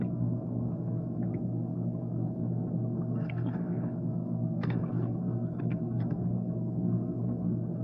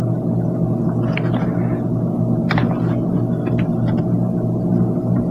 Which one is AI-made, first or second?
first